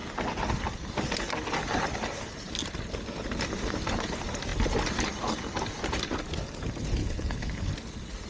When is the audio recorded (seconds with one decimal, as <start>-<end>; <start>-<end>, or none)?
0.0-7.0; 7.7-8.3

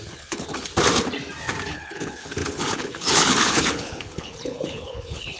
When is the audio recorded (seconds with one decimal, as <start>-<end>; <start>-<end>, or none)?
0.7-1.7

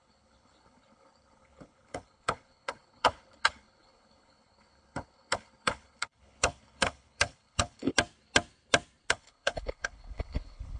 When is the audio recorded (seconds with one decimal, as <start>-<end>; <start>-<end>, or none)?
7.9-9.1

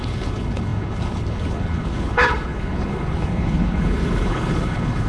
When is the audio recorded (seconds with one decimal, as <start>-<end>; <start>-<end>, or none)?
none

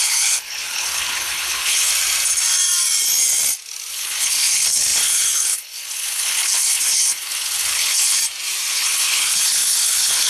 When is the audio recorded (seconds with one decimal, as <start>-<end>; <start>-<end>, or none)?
1.9-3.9; 8.2-8.7

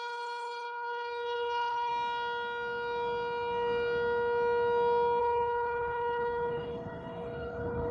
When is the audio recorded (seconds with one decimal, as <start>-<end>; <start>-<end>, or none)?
1.9-5.2

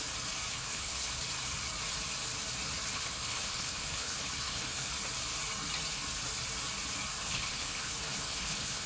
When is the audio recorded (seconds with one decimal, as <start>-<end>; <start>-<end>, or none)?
0.0-0.5; 1.1-2.9; 4.9-7.2